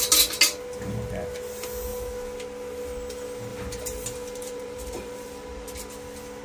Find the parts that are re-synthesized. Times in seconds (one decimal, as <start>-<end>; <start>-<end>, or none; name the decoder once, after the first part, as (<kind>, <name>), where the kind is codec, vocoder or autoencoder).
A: 3.5-5.8 (vocoder, BigVGAN v2)